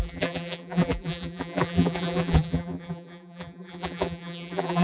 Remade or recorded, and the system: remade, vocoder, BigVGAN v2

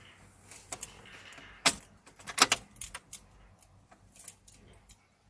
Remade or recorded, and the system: recorded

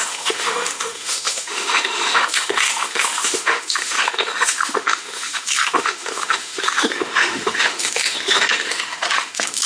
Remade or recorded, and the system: remade, autoencoder, DAC-VAE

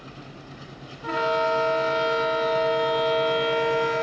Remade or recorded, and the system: recorded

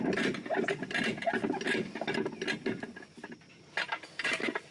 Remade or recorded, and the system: recorded